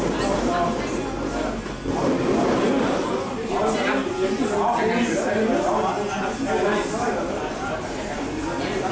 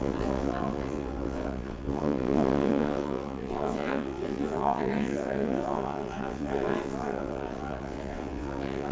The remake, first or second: second